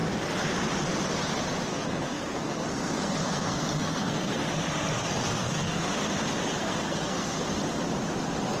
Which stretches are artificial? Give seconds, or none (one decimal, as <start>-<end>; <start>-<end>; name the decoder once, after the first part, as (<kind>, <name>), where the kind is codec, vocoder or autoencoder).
1.7-4.5 (codec, SNAC); 5.4-5.9; 6.5-7.4